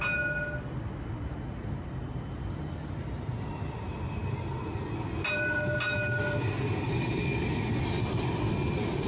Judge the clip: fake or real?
real